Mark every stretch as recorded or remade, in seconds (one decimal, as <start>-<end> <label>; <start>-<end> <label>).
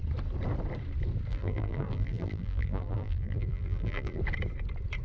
0.0-1.3 recorded; 1.3-4.2 remade; 4.2-5.0 recorded